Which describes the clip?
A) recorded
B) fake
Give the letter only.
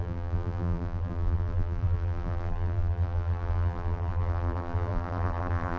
B